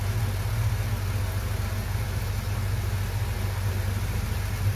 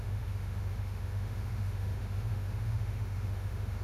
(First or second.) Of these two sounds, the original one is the first